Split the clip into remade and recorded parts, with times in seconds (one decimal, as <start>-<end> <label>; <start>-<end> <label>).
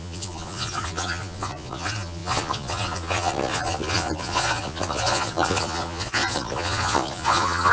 0.0-7.7 remade